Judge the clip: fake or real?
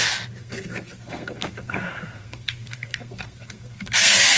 fake